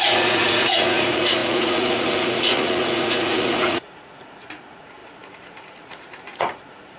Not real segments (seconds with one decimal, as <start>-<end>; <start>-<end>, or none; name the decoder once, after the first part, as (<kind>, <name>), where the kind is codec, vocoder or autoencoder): 0.0-7.0 (vocoder, Vocos)